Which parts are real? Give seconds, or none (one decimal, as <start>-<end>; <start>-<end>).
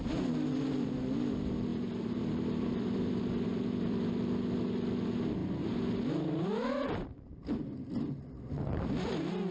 0.0-1.7; 4.1-5.4; 8.5-9.5